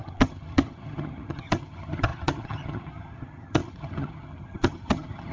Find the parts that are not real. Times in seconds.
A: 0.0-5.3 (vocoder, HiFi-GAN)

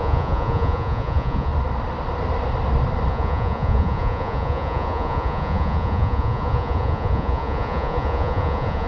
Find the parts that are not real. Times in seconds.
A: 0.0-1.5 (vocoder, Vocos); 3.1-8.9